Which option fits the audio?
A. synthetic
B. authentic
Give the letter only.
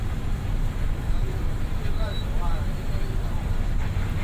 A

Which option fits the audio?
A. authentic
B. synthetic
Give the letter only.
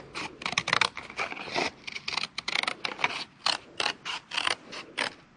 A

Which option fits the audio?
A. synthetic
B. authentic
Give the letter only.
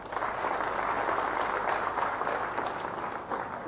B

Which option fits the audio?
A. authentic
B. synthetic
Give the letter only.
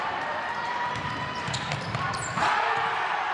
B